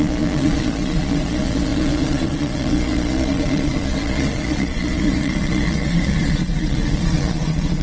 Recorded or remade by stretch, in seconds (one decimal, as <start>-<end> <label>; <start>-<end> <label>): 0.0-7.8 remade